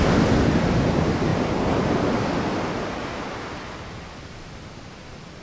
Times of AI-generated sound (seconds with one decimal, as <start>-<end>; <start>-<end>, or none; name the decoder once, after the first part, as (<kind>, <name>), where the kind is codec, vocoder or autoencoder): none